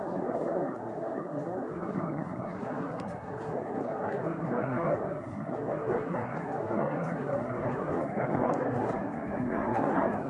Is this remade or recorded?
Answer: remade